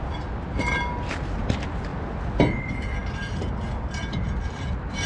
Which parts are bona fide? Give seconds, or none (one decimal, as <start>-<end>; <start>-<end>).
0.0-5.1